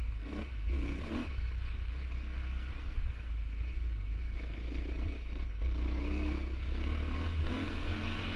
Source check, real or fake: fake